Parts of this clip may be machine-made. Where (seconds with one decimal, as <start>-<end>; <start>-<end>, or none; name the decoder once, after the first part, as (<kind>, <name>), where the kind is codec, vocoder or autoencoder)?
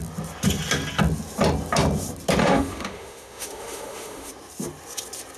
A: 2.4-4.3 (autoencoder, DAC-VAE)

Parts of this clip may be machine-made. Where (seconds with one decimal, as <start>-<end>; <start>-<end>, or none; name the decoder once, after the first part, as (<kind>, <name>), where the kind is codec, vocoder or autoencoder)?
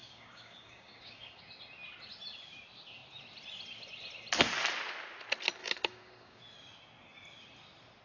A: 0.0-1.4 (codec, DAC); 5.6-6.4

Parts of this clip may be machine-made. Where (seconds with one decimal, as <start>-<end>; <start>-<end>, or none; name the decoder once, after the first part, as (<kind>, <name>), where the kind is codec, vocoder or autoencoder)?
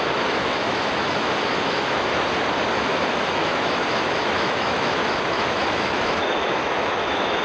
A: 0.0-2.1 (autoencoder, DAC-VAE); 2.7-7.4